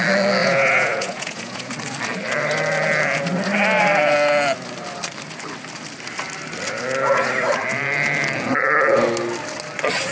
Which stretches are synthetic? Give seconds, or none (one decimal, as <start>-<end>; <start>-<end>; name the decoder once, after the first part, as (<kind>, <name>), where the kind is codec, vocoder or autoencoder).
0.4-1.7 (vocoder, Vocos)